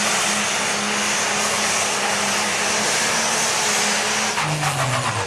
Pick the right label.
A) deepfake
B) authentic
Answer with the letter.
B